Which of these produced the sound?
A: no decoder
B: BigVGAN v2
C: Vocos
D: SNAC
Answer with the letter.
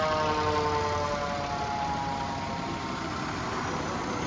A